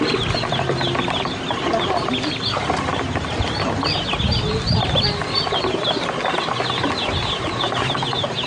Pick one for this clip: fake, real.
real